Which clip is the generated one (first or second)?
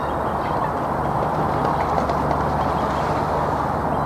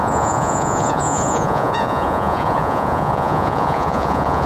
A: second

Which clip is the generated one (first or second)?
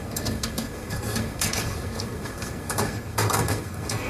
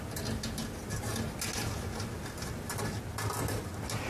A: first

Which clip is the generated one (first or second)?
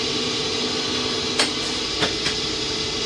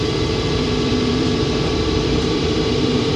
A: second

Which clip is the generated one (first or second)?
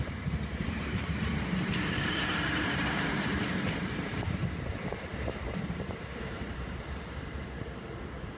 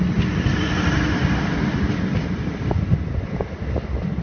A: first